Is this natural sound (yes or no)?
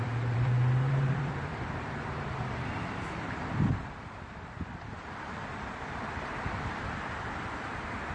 no